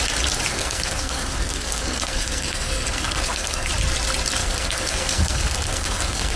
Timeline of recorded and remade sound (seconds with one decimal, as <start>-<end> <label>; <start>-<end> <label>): 0.0-0.5 recorded; 0.5-3.7 remade; 3.7-4.4 recorded; 4.4-6.4 remade